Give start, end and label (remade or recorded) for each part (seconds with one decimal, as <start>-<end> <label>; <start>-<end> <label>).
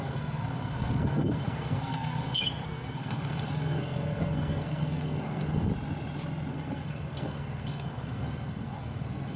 0.0-5.7 remade; 5.7-6.5 recorded; 6.5-9.4 remade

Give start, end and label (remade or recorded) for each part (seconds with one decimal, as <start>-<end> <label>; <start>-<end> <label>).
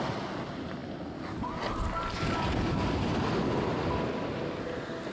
0.0-5.1 recorded